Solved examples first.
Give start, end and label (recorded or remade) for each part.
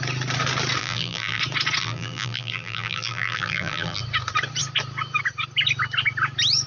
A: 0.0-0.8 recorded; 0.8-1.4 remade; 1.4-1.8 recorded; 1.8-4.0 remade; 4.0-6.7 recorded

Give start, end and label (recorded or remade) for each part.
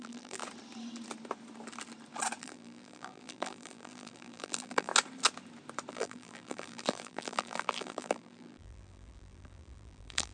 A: 0.0-0.4 remade; 0.4-2.4 recorded; 2.4-4.9 remade; 4.9-5.9 recorded; 5.9-10.3 remade